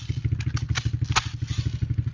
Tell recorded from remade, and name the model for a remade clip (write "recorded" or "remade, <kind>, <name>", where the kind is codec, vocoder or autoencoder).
recorded